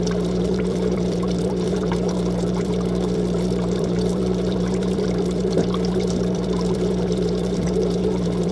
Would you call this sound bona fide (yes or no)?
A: no